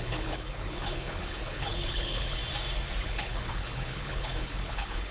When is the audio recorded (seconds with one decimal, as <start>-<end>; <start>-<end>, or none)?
2.4-3.0